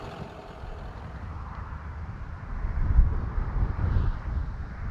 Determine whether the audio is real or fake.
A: real